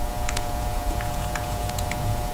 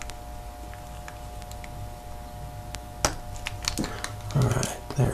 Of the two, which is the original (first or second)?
second